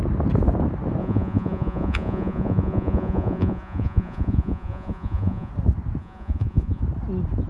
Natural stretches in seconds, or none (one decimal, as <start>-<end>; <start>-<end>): 0.0-1.0; 5.5-6.0; 6.8-7.5

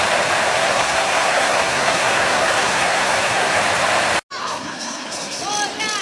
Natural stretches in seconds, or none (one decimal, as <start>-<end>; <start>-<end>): 0.0-0.5; 3.6-4.4; 5.4-6.0

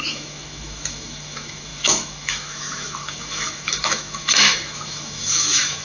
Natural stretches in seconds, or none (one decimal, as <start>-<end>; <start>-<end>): none

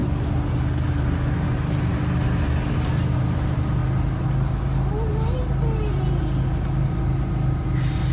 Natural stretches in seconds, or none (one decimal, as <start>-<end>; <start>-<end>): 0.0-8.1

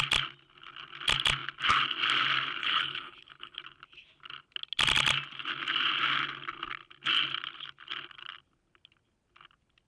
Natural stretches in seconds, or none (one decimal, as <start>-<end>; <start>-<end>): 0.0-2.6; 3.6-9.9

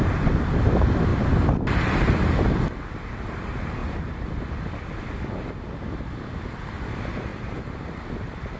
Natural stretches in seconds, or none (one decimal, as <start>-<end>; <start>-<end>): 0.0-1.1; 1.8-3.8; 4.4-7.3; 7.9-8.6

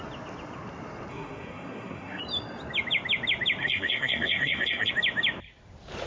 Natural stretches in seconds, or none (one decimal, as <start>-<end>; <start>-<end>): 0.0-1.1; 2.2-3.6; 4.9-6.1

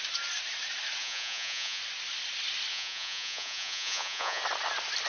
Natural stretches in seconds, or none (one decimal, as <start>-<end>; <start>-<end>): 0.0-1.0; 1.8-2.7; 4.4-5.1